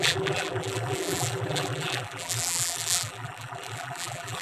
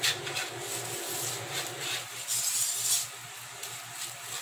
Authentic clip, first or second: second